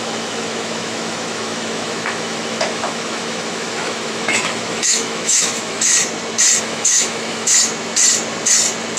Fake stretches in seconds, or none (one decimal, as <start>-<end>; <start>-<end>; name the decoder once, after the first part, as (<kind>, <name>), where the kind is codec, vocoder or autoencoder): 0.0-5.9 (autoencoder, DAC-VAE); 6.6-7.5